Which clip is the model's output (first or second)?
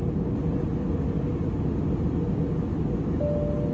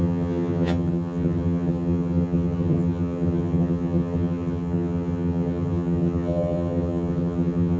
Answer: second